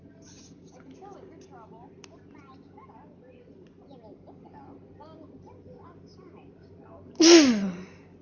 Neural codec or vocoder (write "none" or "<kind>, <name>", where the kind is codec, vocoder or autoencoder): none